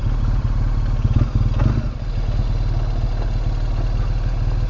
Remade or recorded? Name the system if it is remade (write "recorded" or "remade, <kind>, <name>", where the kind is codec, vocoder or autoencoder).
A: recorded